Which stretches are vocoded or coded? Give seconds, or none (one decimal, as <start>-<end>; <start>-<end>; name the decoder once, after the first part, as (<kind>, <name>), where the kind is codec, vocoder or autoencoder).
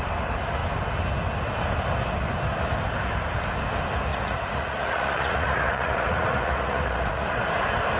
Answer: 4.1-7.4 (vocoder, Vocos)